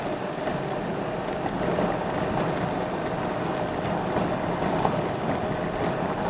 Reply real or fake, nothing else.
real